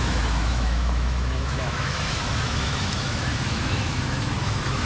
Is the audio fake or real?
fake